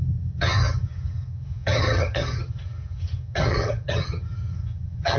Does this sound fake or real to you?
fake